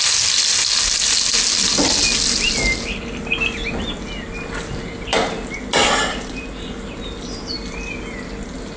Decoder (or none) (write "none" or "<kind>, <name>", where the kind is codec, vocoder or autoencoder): none